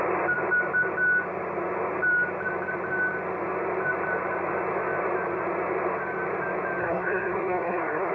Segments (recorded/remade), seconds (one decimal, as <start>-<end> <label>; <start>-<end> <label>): 0.0-6.8 recorded; 6.8-8.1 remade